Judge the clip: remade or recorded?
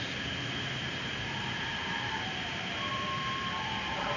remade